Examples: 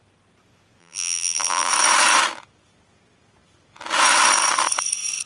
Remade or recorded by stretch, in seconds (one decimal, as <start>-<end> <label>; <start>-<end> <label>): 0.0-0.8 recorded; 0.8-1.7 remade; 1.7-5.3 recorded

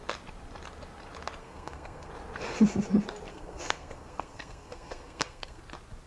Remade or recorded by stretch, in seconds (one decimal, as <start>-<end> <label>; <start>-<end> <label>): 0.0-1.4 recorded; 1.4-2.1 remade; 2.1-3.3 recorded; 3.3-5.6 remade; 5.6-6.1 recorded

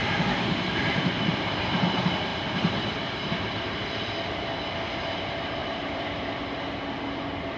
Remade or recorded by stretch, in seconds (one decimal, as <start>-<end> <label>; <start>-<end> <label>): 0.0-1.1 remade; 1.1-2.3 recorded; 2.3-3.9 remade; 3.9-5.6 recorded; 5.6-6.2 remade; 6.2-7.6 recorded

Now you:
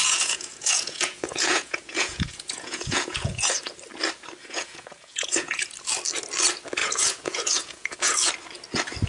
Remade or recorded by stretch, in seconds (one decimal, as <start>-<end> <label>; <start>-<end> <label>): 0.0-3.5 remade; 3.5-4.4 recorded; 4.4-5.6 remade; 5.6-6.8 recorded; 6.8-8.3 remade; 8.3-9.1 recorded